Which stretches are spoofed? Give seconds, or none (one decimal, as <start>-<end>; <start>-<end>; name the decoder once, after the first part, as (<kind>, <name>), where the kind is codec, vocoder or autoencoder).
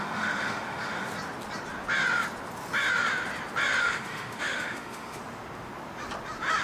0.0-1.1 (autoencoder, DAC-VAE); 3.8-5.2